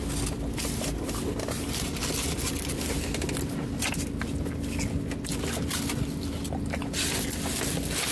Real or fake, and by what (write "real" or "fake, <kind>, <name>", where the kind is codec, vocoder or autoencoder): real